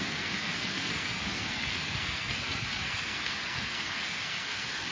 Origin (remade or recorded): remade